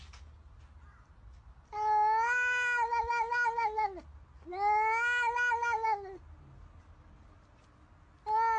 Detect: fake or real real